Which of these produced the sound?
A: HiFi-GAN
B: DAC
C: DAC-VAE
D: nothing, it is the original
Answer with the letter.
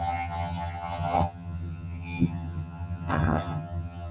A